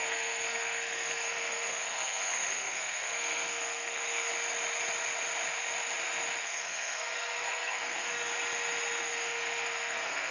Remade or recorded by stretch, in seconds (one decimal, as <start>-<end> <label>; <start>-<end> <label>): 0.0-4.3 remade; 4.3-6.4 recorded; 6.4-8.3 remade; 8.3-9.0 recorded; 9.0-10.3 remade